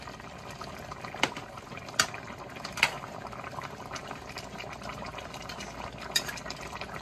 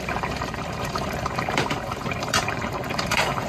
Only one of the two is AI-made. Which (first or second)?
second